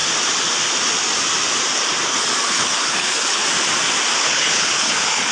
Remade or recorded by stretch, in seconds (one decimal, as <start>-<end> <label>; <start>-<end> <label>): 0.0-2.5 recorded; 2.5-3.4 remade; 3.4-4.2 recorded; 4.2-5.3 remade